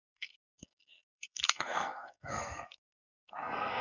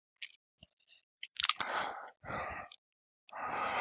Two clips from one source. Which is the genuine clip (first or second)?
second